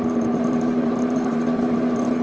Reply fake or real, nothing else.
fake